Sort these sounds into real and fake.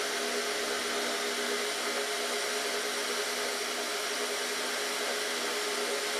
real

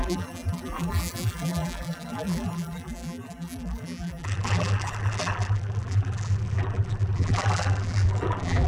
fake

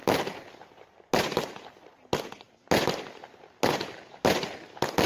real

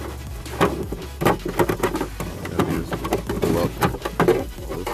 real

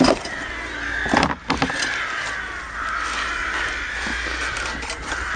real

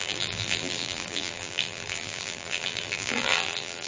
fake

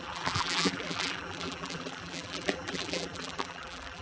fake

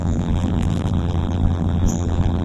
fake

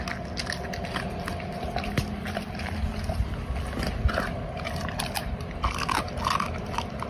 real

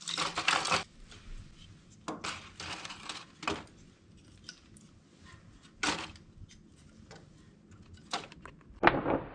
real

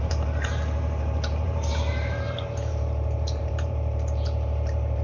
fake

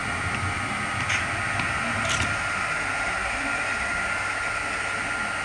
real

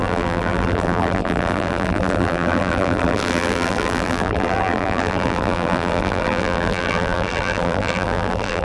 fake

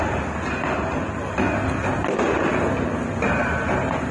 real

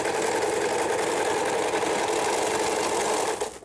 real